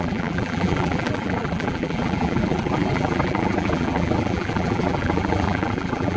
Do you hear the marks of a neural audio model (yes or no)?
yes